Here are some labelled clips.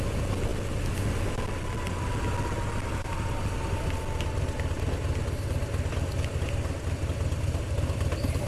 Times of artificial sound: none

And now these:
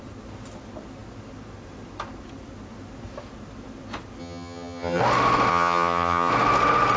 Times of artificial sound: 4.2-5.0 (vocoder, HiFi-GAN); 5.5-6.3

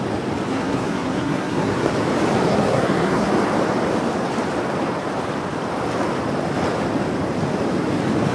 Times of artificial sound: 0.5-1.9 (codec, SNAC); 2.5-3.3

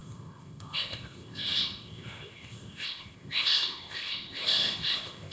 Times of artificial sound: 0.0-5.3 (codec, ZipCodec)

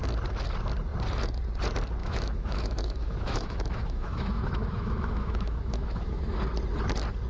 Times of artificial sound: 2.0-6.4 (autoencoder, DAC-VAE)

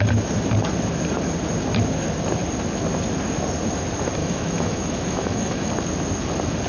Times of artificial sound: 4.2-5.7 (autoencoder, DAC-VAE)

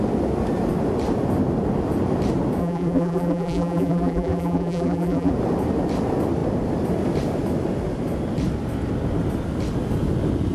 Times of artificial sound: 2.6-5.3 (vocoder, BigVGAN v2)

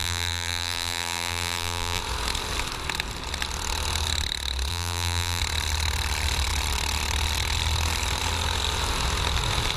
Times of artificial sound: 0.0-2.0 (vocoder, BigVGAN v2); 4.7-5.4